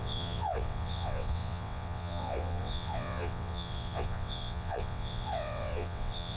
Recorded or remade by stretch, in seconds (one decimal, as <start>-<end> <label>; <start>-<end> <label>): 0.0-6.4 remade